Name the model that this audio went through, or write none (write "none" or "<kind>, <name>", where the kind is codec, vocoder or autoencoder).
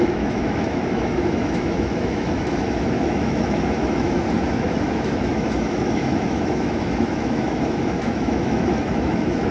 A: autoencoder, DAC-VAE